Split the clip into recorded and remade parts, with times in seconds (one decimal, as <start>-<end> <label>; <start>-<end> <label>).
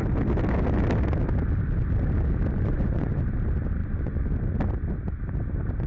0.0-2.5 recorded; 2.5-3.1 remade; 3.1-3.8 recorded; 3.8-4.3 remade; 4.3-5.9 recorded